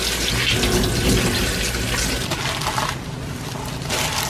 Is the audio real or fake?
real